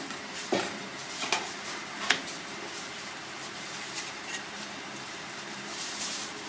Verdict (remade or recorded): remade